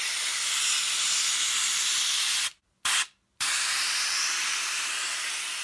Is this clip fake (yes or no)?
no